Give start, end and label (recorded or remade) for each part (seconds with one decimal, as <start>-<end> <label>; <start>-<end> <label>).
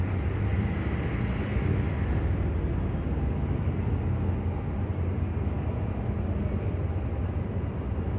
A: 0.0-8.2 recorded